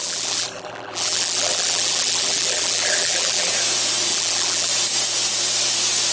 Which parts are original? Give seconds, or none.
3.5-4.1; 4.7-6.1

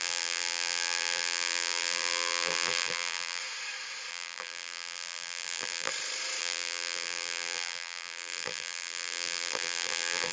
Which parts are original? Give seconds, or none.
3.4-4.1; 5.9-6.4

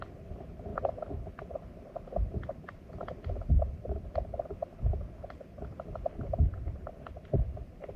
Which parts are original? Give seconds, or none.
0.7-3.8; 4.6-5.3

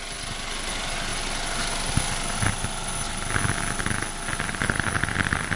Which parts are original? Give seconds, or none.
1.1-4.5

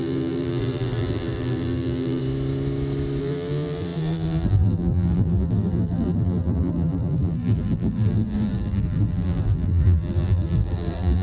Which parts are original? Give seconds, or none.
2.2-3.2

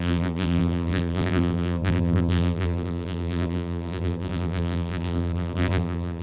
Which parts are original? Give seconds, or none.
none

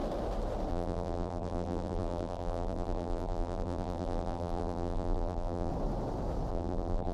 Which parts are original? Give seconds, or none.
0.0-0.7; 5.7-6.5

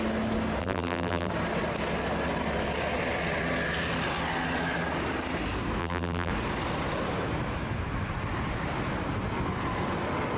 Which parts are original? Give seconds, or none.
0.0-0.6; 1.3-5.8; 6.3-10.4